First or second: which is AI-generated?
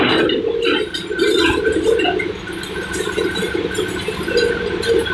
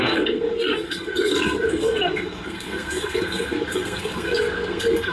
second